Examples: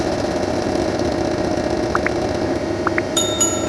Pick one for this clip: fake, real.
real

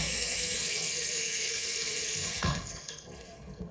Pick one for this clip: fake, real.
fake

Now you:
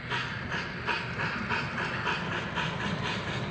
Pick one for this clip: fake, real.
real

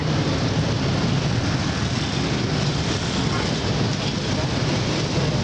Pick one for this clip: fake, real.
real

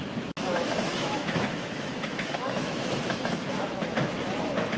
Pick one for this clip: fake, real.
fake